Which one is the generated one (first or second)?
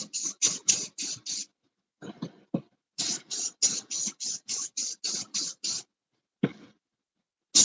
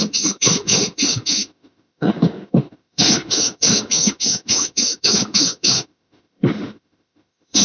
second